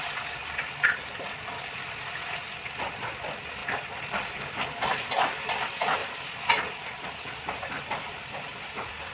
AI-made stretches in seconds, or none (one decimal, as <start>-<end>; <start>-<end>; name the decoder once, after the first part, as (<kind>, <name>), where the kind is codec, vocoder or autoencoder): 0.0-3.6 (vocoder, BigVGAN v2); 4.9-6.0; 6.5-9.1